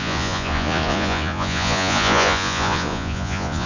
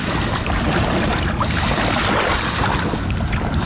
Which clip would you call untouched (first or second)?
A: second